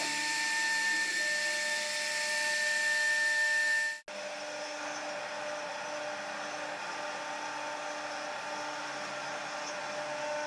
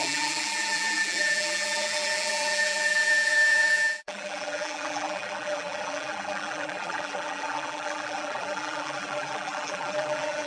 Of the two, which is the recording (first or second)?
first